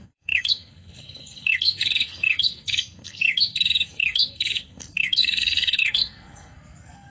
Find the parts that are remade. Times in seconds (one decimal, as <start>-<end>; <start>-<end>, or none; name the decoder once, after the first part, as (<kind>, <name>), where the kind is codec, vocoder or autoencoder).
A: 0.0-7.1 (codec, SNAC)